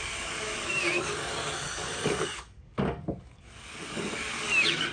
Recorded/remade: remade